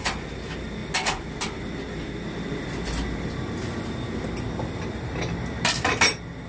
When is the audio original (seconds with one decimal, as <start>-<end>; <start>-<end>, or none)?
0.0-6.5